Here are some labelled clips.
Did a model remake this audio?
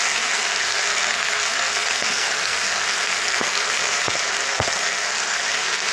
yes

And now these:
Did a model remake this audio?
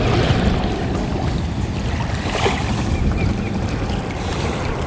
no